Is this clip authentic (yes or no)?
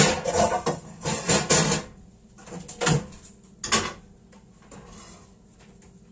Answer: yes